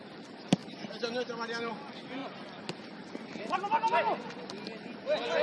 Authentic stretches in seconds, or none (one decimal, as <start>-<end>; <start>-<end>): 0.0-5.4